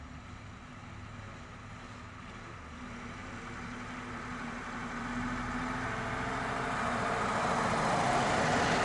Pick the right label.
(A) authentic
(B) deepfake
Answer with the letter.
A